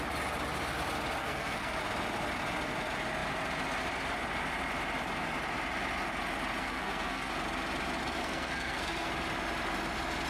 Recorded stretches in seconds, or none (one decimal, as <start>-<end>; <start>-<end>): 0.0-1.2; 1.8-6.6; 7.3-8.2; 9.1-10.3